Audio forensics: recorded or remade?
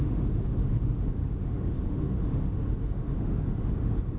remade